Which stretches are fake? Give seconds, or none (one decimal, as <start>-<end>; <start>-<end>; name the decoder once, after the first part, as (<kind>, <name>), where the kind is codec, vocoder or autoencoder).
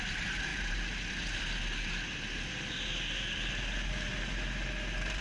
none